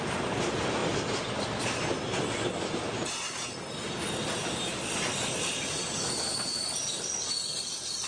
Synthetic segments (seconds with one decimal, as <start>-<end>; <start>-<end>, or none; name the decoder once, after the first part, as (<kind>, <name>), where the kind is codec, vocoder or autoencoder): none